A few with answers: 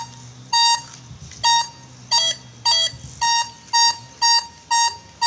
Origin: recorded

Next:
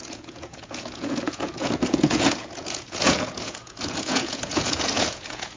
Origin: remade